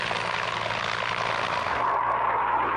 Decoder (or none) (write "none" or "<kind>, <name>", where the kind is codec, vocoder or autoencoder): none